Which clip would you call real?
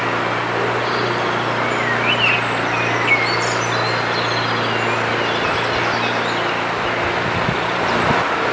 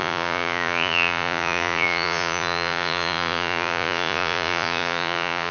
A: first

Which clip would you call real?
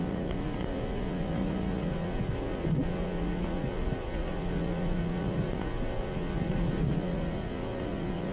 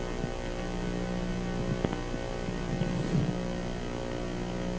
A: second